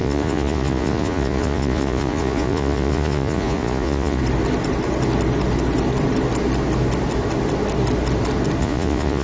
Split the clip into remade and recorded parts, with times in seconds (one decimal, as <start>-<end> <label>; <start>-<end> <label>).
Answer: 0.0-4.2 remade; 4.2-8.6 recorded; 8.6-9.2 remade